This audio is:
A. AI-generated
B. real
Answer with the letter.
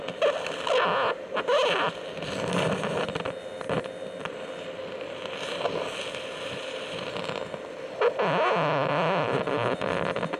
B